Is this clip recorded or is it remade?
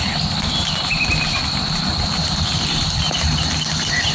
recorded